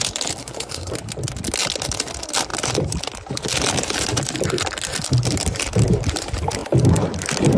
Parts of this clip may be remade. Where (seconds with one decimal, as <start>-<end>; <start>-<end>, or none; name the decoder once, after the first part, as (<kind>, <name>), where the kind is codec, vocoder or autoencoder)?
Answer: 0.4-0.9 (codec, SNAC)